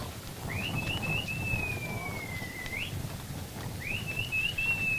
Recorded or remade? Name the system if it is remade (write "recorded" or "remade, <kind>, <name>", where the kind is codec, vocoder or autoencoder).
recorded